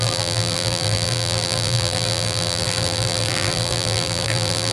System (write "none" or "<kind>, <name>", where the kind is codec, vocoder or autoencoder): vocoder, BigVGAN v2